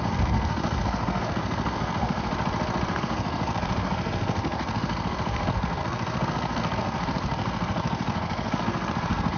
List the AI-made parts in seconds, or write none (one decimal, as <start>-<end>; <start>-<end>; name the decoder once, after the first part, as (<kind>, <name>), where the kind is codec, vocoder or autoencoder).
0.0-2.3 (codec, SNAC); 2.9-9.4